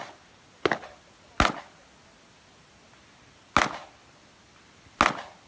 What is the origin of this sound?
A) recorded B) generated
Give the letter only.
A